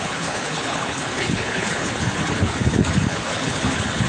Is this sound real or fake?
fake